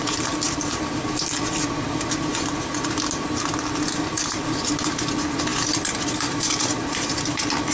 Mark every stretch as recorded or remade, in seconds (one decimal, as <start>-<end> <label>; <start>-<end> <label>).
0.0-7.7 recorded